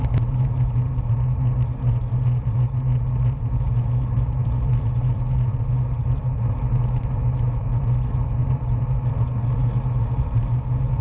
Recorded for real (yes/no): yes